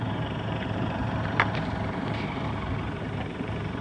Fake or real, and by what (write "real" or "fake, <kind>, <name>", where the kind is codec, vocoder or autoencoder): fake, vocoder, BigVGAN v2